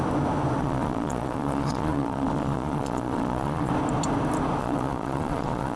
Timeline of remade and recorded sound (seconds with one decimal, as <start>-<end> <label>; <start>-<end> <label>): 0.0-0.6 recorded; 0.6-3.7 remade; 3.7-4.6 recorded; 4.6-5.8 remade